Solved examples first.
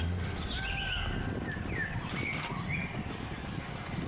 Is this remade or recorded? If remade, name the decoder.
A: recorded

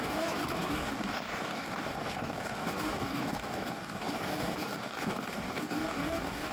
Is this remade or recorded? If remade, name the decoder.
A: remade, codec, DAC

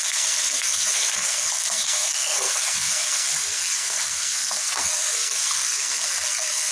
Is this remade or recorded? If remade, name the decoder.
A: remade, codec, SNAC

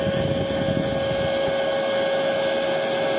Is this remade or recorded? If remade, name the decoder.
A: recorded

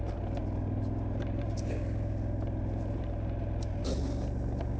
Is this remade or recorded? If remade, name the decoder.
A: recorded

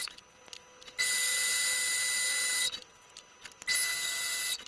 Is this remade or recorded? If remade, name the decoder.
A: recorded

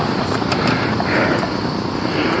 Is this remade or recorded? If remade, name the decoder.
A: recorded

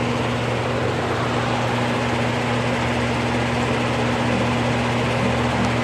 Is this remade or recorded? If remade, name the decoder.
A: recorded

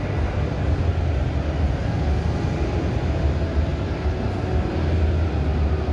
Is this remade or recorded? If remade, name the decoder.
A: recorded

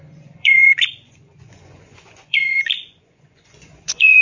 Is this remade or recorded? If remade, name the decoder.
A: remade, vocoder, Vocos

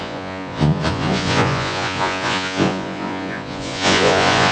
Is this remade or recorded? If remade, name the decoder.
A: remade, vocoder, Vocos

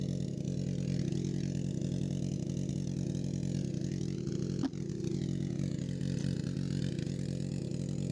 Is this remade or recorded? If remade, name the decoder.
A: recorded